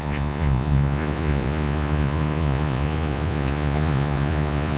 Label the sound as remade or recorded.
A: remade